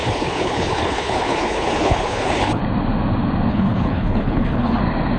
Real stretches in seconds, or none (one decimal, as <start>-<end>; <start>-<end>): 2.6-3.5; 4.8-5.2